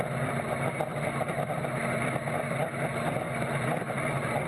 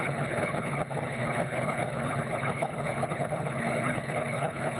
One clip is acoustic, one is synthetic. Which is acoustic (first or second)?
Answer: first